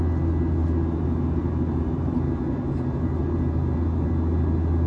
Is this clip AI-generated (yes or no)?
no